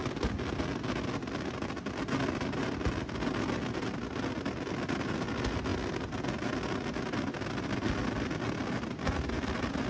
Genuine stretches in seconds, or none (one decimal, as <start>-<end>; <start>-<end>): 0.0-9.9